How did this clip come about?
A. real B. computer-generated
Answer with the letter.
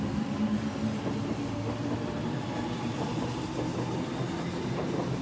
A